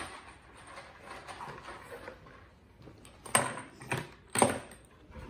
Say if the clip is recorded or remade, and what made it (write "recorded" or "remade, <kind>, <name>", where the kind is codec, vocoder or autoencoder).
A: recorded